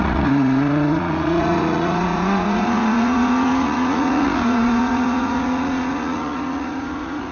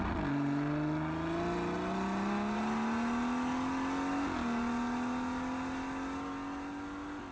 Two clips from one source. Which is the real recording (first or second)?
second